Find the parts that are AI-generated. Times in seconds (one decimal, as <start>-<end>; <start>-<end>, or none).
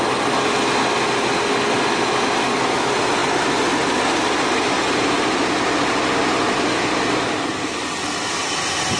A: none